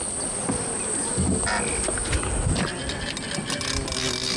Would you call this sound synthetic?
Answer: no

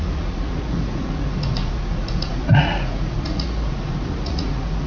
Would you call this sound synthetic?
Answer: yes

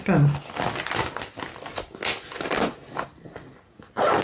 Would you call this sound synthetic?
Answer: no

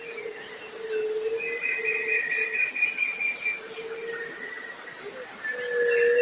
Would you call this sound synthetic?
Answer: no